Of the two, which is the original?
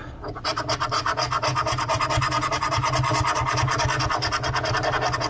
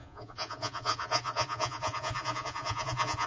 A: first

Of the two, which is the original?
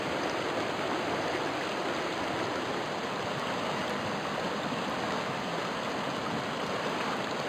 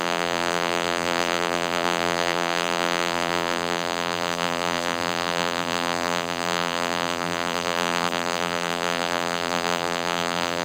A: first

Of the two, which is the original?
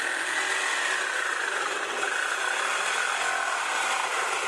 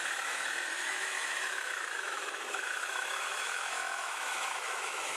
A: first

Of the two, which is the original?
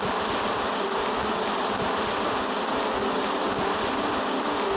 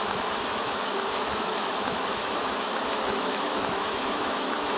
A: first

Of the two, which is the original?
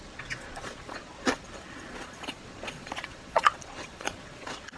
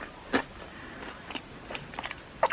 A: second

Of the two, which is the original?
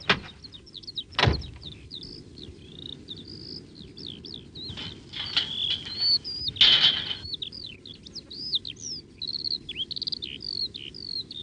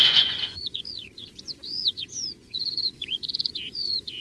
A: first